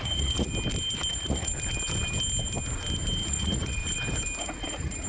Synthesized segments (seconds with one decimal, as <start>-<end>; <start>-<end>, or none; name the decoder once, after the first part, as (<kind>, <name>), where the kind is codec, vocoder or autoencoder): 0.0-0.5 (vocoder, Vocos); 1.1-1.5; 3.3-3.8; 4.4-5.1